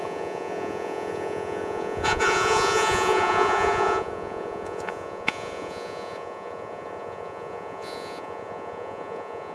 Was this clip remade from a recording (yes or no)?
yes